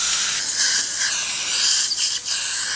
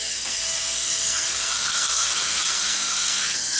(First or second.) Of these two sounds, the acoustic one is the first